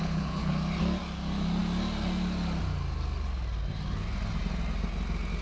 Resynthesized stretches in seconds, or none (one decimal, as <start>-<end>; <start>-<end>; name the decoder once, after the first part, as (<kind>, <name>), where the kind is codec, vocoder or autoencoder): 0.0-0.5 (codec, HILCodec)